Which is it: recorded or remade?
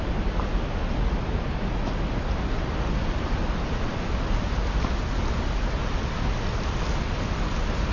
recorded